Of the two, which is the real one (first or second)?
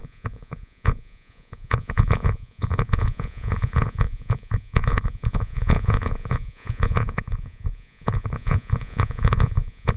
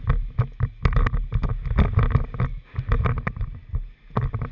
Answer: second